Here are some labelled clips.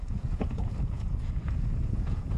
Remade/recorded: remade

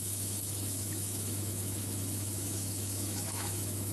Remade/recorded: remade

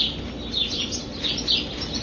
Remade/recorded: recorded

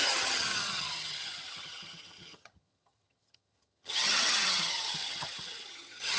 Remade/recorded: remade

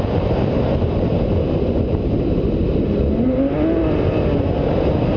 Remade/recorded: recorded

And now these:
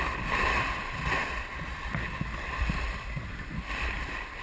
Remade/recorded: recorded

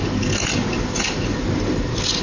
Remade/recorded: recorded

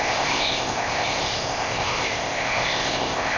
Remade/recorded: remade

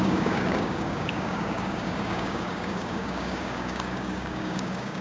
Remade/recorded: remade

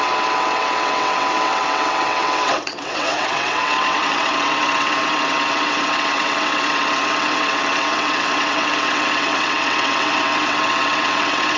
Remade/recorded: remade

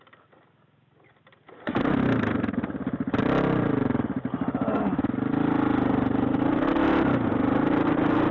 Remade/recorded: recorded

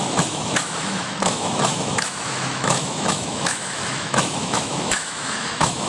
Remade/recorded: remade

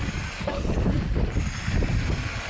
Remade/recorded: recorded